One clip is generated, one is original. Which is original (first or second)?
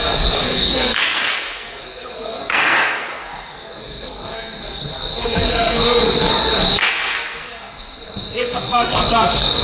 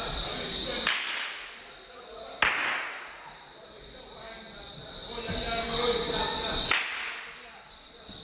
second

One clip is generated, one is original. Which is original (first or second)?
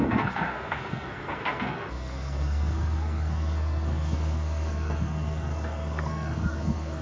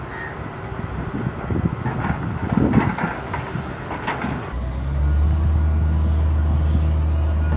second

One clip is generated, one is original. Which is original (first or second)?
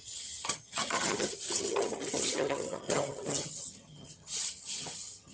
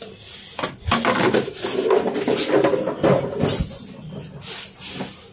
second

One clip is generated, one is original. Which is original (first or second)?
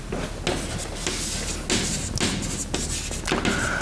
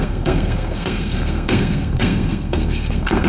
first